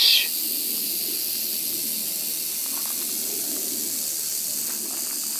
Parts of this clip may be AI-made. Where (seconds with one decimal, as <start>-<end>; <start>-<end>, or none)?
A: none